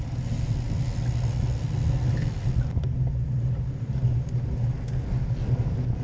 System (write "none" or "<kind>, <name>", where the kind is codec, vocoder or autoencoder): none